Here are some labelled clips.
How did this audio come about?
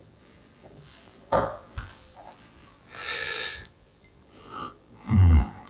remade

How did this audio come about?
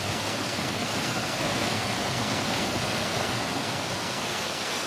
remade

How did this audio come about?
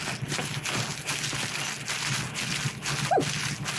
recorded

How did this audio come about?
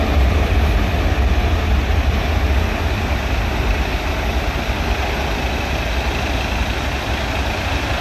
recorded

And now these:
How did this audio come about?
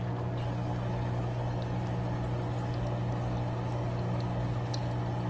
recorded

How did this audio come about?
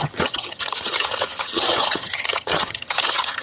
remade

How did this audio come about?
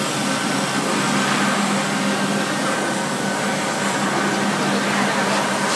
recorded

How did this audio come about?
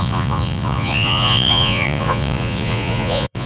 remade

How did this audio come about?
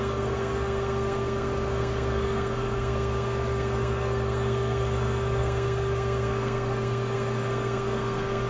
remade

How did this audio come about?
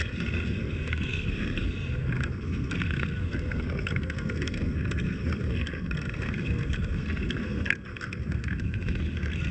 remade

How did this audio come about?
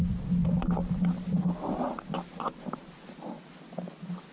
recorded